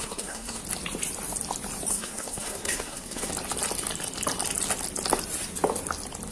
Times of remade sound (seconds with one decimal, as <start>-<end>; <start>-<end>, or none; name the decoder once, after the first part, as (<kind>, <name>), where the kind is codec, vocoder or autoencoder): 0.0-0.6 (codec, SNAC); 1.9-3.3